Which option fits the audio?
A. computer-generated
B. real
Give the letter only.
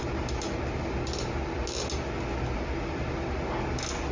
B